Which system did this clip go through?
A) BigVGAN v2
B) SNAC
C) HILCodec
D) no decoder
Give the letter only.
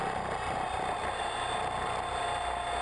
D